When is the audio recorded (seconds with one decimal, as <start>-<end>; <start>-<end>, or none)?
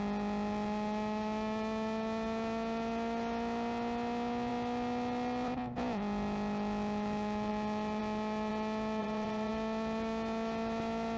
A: 0.0-9.0; 9.5-11.2